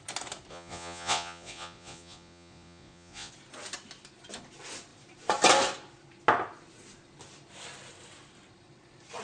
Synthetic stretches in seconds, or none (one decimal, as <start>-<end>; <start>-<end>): 0.5-3.3